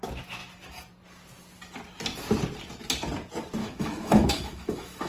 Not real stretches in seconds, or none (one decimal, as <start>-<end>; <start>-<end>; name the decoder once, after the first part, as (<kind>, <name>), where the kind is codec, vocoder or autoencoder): 3.6-5.1 (autoencoder, DAC-VAE)